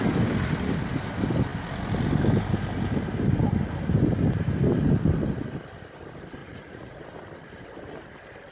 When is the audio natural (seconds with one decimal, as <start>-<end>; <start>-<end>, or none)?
0.0-6.4; 7.0-8.5